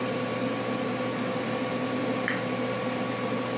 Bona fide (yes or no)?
yes